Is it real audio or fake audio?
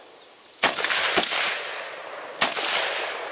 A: real